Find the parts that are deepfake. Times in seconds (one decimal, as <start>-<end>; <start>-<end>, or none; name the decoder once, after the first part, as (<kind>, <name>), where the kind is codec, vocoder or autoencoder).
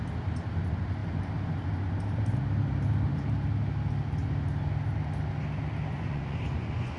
5.9-7.0 (vocoder, Vocos)